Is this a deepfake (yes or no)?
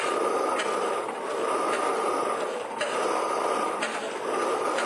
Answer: yes